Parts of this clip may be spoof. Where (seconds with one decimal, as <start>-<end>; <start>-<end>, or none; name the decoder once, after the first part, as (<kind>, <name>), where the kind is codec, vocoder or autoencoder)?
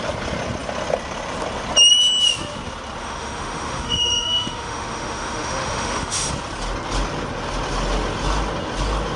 3.0-6.3 (autoencoder, DAC-VAE)